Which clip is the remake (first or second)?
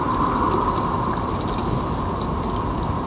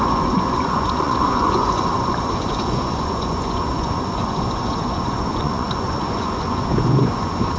second